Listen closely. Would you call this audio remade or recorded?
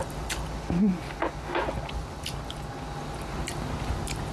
recorded